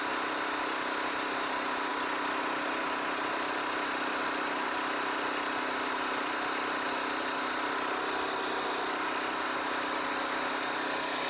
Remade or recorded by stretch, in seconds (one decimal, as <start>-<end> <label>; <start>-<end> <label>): 0.0-11.3 recorded